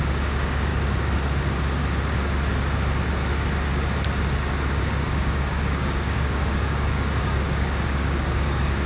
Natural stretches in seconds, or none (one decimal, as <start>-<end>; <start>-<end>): 0.7-4.8